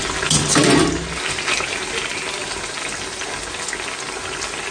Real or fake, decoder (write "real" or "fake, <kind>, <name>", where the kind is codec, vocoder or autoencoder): real